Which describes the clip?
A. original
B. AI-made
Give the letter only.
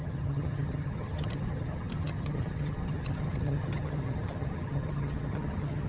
B